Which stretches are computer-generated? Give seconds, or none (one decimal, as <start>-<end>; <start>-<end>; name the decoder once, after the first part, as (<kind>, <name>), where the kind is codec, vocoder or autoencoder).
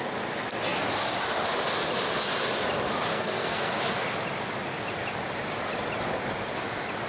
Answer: 3.1-3.7 (codec, SNAC)